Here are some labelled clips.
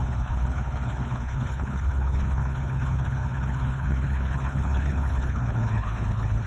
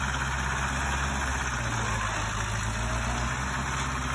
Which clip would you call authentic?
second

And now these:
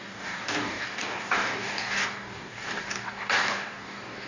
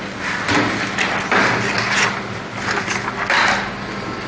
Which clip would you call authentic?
second